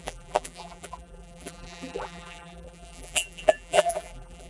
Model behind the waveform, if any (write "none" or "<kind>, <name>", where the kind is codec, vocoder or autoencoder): vocoder, BigVGAN v2